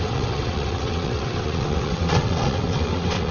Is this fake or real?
fake